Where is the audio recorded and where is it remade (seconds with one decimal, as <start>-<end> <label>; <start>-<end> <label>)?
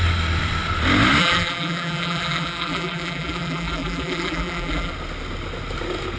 0.0-1.2 recorded; 1.2-4.9 remade; 4.9-6.2 recorded